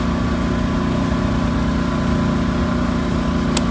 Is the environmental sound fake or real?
real